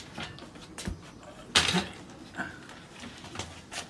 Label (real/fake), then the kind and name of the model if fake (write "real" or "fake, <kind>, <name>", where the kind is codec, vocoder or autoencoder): real